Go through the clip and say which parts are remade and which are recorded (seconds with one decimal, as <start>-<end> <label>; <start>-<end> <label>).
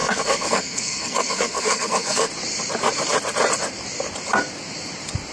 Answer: 0.0-2.3 remade; 2.3-5.3 recorded